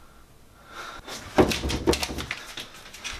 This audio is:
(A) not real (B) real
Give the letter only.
B